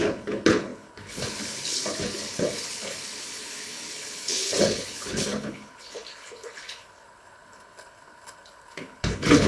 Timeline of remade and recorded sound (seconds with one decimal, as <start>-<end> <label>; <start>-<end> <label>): 0.0-9.5 remade